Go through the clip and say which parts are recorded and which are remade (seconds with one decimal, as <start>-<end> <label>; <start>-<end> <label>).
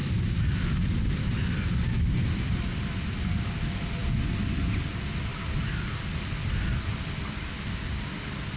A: 0.0-8.6 recorded